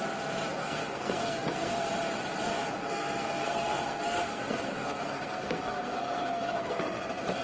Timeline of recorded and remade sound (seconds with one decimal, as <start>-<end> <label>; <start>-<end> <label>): 0.0-0.6 recorded; 0.6-1.9 remade; 1.9-2.8 recorded; 2.8-7.0 remade; 7.0-7.4 recorded